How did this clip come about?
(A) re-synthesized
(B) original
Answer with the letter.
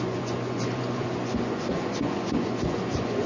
A